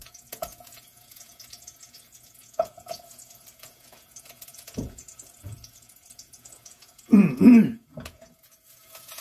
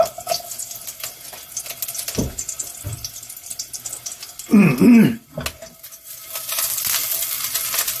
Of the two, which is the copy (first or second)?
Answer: first